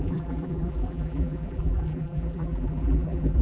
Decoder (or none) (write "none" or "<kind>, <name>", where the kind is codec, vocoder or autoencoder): vocoder, BigVGAN v2